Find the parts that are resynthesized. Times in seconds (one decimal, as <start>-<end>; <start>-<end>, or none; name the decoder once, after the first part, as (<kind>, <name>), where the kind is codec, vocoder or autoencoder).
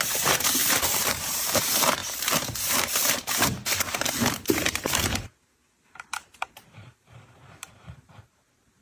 0.0-8.8 (vocoder, BigVGAN v2)